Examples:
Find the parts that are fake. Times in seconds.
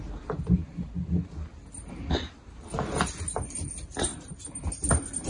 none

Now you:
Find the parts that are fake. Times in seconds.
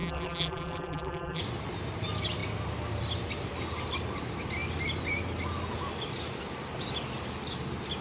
0.0-1.4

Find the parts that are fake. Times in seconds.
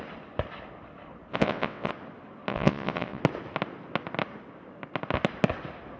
1.3-1.9; 2.5-3.2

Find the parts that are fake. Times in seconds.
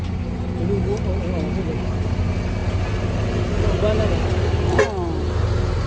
none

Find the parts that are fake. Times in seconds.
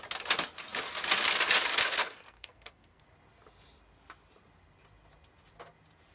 2.0-3.0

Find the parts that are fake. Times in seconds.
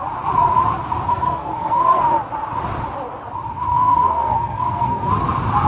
1.1-2.0; 3.7-5.1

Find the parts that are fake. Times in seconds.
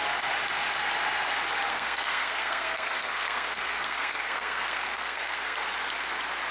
1.7-5.6